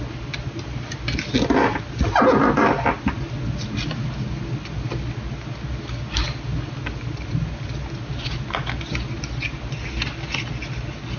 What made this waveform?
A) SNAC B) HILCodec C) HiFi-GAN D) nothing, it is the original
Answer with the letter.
D